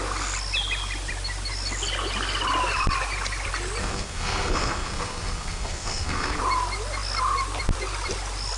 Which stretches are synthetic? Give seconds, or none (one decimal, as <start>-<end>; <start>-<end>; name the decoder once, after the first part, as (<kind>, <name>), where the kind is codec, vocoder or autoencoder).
3.8-6.4 (codec, SNAC)